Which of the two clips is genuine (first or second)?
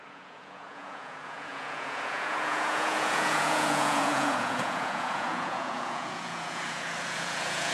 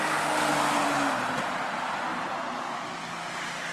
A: second